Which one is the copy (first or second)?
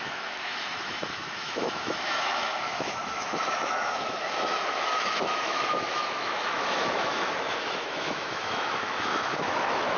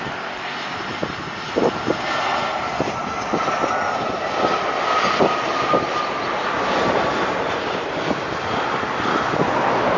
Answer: first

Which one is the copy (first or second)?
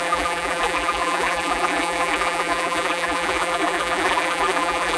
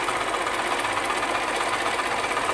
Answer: first